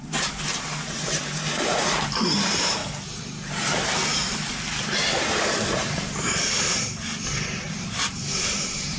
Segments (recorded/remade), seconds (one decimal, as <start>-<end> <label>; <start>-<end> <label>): 0.0-2.8 remade; 2.8-3.5 recorded; 3.5-9.0 remade